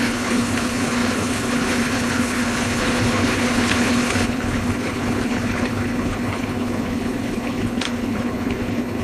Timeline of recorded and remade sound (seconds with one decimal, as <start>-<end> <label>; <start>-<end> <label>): 0.0-9.0 remade